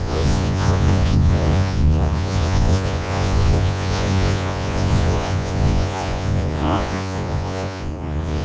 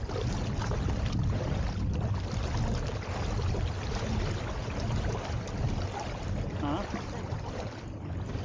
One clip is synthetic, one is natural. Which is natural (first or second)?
second